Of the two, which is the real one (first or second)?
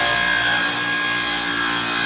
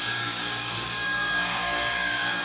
first